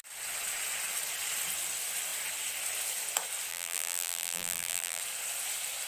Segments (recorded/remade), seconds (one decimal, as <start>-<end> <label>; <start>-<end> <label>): 0.0-3.5 recorded; 3.5-5.0 remade; 5.0-5.9 recorded

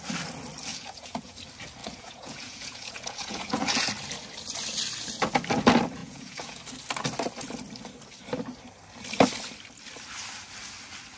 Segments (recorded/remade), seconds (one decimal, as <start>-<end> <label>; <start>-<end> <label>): 0.0-0.7 recorded; 0.7-1.4 remade; 1.4-1.8 recorded; 1.8-3.9 remade; 3.9-6.0 recorded; 6.0-6.6 remade; 6.6-11.2 recorded

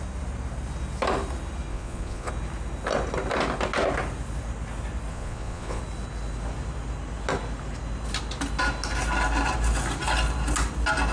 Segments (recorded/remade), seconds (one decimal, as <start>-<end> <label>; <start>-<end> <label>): 0.0-1.7 recorded; 1.7-2.3 remade; 2.3-5.1 recorded; 5.1-5.8 remade; 5.8-11.1 recorded

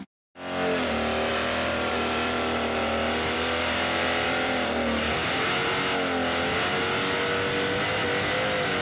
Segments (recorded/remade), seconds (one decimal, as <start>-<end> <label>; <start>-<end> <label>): 0.0-1.3 recorded; 1.3-5.1 remade; 5.1-8.8 recorded

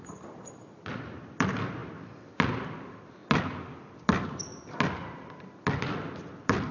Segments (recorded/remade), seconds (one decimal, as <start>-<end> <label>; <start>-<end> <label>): 0.0-4.5 remade; 4.5-6.0 recorded; 6.0-6.7 remade

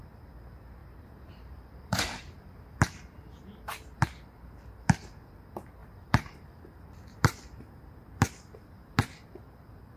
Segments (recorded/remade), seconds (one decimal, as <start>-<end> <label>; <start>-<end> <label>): 0.0-0.8 recorded; 0.8-2.5 remade; 2.5-5.8 recorded; 5.8-6.9 remade; 6.9-10.0 recorded